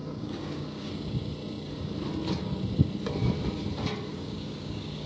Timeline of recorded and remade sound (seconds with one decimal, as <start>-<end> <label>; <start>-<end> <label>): 0.0-0.9 remade; 0.9-4.1 recorded; 4.1-5.1 remade